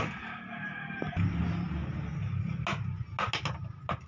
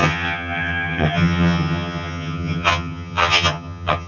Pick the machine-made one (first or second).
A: second